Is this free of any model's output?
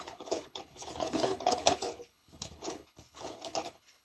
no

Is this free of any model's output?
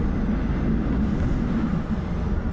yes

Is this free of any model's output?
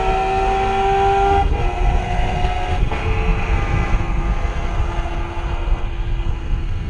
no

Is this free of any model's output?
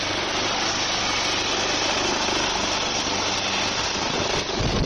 yes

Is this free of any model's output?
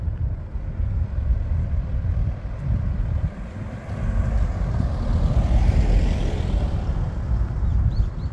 no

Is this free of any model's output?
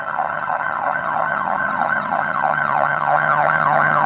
no